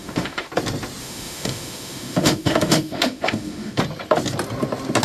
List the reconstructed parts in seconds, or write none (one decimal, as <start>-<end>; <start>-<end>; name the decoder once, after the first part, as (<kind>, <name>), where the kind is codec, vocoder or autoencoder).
0.0-0.5 (autoencoder, DAC-VAE); 1.0-3.8